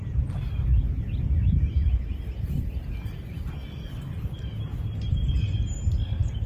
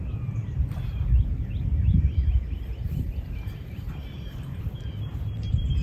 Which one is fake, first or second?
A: second